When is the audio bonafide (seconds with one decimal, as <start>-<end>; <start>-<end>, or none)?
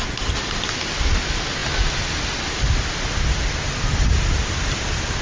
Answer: 0.0-5.2